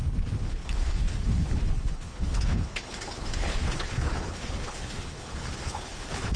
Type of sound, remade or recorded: remade